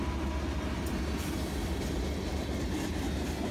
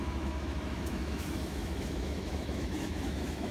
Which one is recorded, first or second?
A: first